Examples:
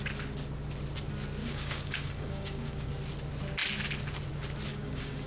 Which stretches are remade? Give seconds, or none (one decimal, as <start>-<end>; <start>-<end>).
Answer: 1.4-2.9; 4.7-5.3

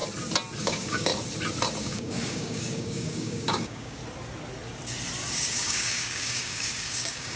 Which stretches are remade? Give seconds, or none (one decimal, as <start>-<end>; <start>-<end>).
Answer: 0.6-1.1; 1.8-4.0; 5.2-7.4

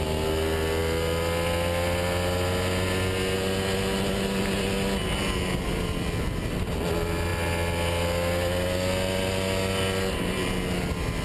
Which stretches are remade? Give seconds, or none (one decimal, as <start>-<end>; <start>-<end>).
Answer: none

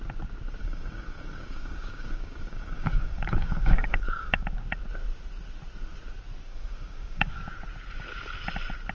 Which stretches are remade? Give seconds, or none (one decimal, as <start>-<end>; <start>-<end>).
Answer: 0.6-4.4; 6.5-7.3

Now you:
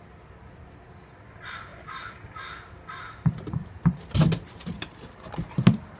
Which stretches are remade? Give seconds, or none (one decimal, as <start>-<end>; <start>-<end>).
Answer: none